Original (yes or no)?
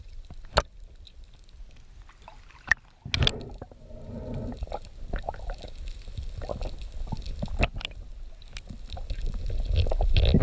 yes